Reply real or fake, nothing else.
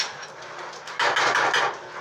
real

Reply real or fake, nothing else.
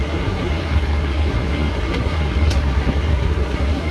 fake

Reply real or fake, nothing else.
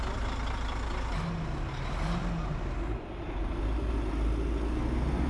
real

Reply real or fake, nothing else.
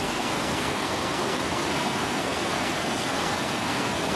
fake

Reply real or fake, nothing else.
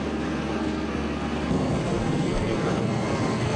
fake